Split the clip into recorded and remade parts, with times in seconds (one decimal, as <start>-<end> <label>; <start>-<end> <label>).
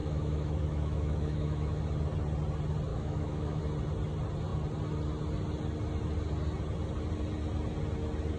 0.0-1.8 remade; 1.8-2.9 recorded; 2.9-3.6 remade; 3.6-8.4 recorded